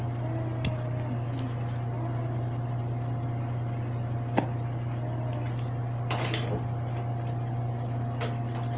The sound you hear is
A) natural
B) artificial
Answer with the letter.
A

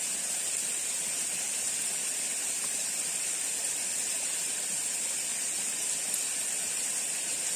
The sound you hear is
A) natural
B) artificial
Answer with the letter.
A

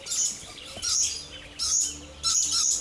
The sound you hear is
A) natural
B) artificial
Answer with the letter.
A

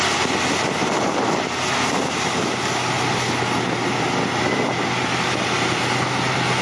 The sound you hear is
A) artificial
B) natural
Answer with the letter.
B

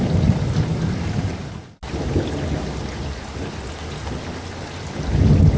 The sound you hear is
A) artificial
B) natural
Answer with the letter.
B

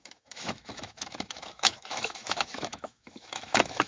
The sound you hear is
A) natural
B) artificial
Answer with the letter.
B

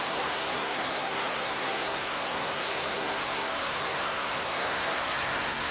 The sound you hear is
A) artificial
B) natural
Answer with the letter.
A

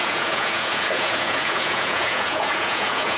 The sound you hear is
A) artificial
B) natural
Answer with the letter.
A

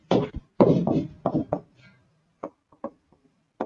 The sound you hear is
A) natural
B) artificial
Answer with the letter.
A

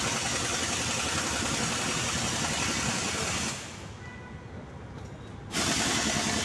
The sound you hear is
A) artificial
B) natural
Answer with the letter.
B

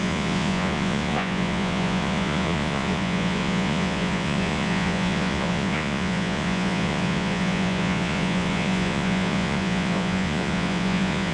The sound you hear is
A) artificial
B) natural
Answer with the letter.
A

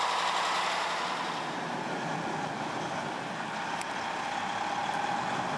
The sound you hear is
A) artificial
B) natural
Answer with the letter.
B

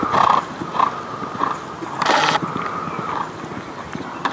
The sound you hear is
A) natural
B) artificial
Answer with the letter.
A